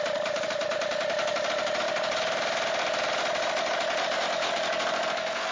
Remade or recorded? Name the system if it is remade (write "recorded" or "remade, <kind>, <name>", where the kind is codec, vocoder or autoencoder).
recorded